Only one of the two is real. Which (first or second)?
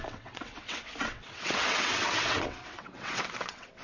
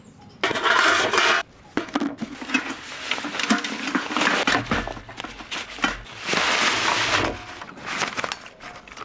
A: second